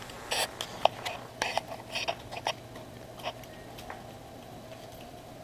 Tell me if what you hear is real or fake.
real